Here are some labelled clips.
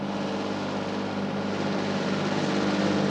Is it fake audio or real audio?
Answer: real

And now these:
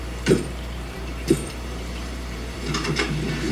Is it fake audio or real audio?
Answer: fake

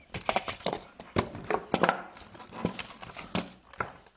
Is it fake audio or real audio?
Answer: fake